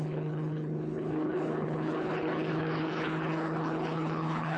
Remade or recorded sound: remade